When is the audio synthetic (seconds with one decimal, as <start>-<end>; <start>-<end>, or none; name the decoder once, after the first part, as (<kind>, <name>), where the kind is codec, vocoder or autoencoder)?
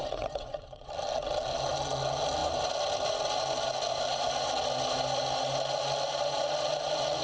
0.0-0.9 (vocoder, WaveNeXt)